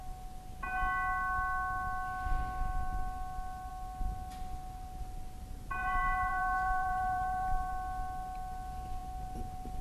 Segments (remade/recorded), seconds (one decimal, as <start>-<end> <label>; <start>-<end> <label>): 0.0-5.8 recorded; 5.8-7.7 remade; 7.7-9.8 recorded